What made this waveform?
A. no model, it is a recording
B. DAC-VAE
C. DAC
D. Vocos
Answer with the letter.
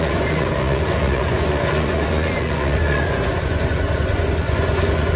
D